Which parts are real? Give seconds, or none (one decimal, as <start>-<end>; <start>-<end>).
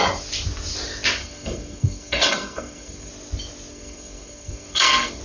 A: 0.0-1.2; 3.1-3.7